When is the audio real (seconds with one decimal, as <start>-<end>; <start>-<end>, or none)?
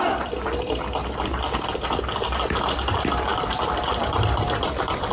0.0-3.3